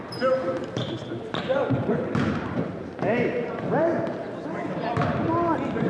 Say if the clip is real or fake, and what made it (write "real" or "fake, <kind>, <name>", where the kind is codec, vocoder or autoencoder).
fake, vocoder, BigVGAN v2